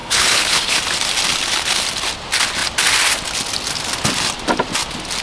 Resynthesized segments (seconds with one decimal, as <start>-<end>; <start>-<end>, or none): 0.0-0.8